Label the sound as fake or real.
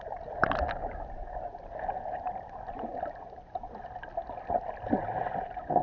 real